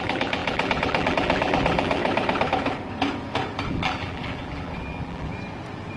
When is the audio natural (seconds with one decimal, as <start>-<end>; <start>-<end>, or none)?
2.0-3.7; 5.3-6.0